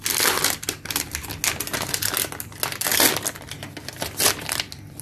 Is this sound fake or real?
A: real